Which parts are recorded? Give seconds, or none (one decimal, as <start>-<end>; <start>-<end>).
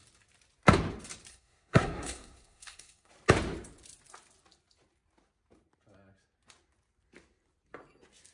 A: 0.0-1.3; 3.1-8.3